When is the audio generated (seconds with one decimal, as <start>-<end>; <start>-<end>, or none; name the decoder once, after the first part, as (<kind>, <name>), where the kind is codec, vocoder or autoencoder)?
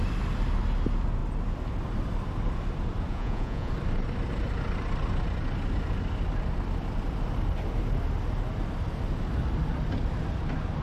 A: 3.1-3.7 (vocoder, Vocos)